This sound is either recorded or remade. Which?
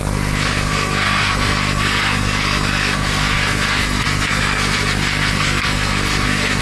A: remade